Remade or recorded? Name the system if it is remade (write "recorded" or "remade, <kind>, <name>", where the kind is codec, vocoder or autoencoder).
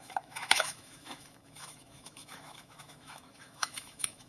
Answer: remade, autoencoder, DAC-VAE